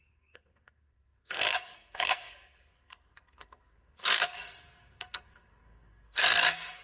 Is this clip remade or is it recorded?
remade